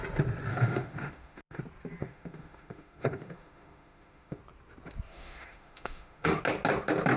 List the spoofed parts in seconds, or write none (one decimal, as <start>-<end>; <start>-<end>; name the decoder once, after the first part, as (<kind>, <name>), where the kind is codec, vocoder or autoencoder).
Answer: 0.5-1.6 (autoencoder, DAC-VAE); 2.0-4.4; 5.1-6.4